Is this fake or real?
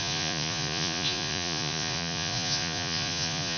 fake